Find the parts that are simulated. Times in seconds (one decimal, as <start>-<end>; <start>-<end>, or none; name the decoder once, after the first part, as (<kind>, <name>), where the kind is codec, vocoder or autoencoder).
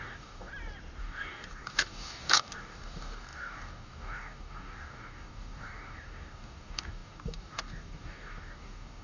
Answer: 0.0-0.5 (codec, DAC); 1.0-9.0